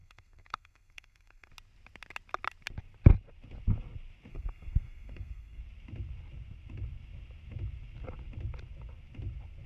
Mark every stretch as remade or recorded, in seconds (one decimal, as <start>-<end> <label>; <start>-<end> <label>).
0.0-1.5 remade; 1.5-4.3 recorded; 4.3-5.6 remade; 5.6-9.7 recorded